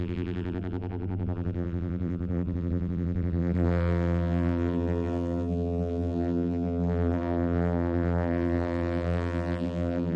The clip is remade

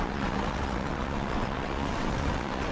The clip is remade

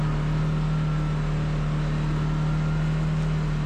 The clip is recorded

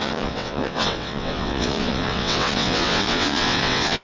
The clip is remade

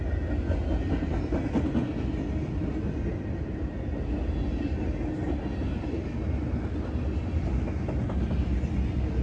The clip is recorded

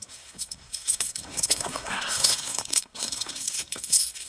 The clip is remade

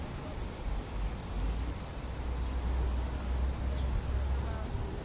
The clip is recorded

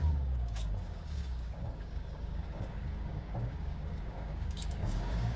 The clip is remade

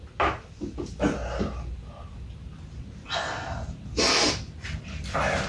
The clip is recorded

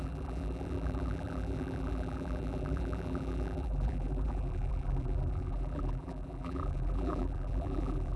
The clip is remade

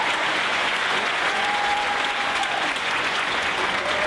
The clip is remade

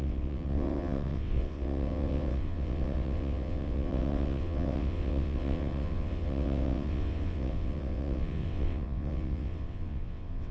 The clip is remade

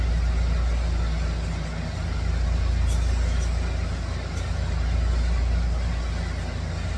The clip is recorded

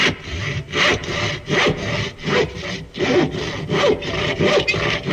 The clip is recorded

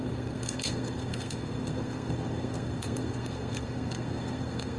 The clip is remade